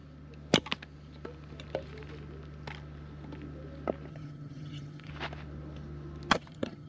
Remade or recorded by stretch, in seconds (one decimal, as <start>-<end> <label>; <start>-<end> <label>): 0.0-4.1 recorded; 4.1-5.1 remade; 5.1-6.3 recorded; 6.3-6.9 remade